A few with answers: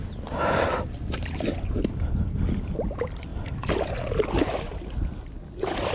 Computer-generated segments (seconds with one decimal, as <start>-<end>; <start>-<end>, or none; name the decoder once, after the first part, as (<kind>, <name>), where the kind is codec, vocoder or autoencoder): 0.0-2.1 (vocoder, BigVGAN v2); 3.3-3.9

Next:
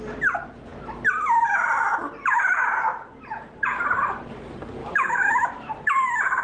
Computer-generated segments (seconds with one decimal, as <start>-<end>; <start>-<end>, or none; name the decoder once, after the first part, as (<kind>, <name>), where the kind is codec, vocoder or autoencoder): 4.8-5.7 (autoencoder, DAC-VAE)

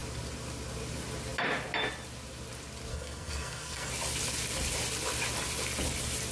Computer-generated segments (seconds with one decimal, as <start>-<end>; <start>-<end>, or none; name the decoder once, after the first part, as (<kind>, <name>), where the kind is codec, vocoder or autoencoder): 2.9-3.9 (codec, SNAC)